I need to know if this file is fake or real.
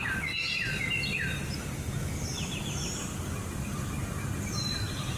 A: real